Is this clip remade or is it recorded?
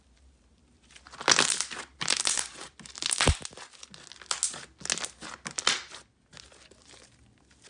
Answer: recorded